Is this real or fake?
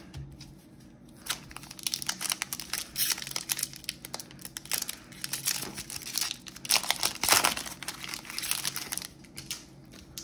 real